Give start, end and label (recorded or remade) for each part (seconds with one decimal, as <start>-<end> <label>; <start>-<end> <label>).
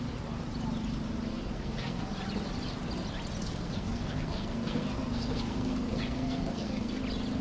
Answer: 0.0-1.3 recorded; 1.3-2.0 remade; 2.0-3.4 recorded; 3.4-7.0 remade; 7.0-7.4 recorded